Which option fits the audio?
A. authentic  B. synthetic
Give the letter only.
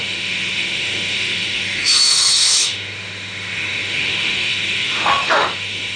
B